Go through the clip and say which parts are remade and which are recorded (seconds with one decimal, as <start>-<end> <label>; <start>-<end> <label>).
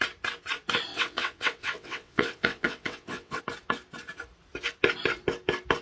0.0-0.9 recorded; 0.9-3.4 remade; 3.4-5.8 recorded